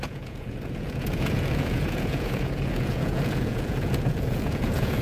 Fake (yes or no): yes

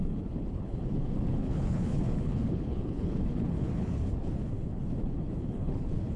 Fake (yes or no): yes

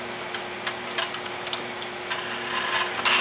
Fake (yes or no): no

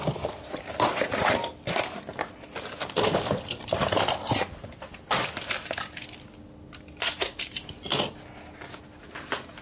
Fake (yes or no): no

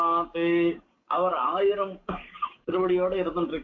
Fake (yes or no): yes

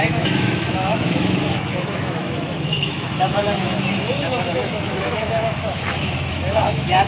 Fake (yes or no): yes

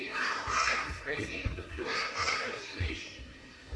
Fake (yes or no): yes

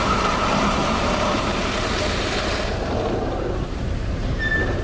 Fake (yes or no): yes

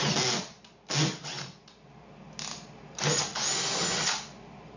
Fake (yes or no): no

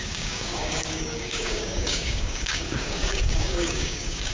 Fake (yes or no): yes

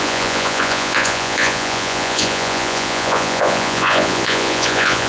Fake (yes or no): yes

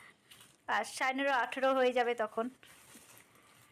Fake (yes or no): no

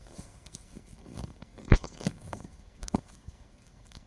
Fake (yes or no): yes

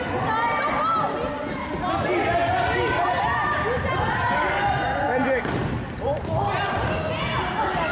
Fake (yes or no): no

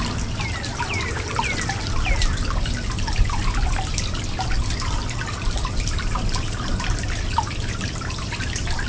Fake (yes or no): no